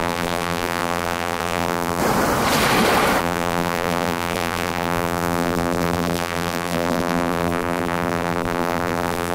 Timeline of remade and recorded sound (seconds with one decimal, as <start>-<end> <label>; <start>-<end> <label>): 0.0-2.0 remade; 2.0-3.2 recorded; 3.2-9.3 remade